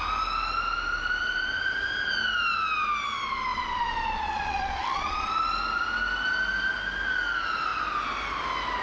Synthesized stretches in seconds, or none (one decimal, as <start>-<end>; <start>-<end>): 3.5-5.3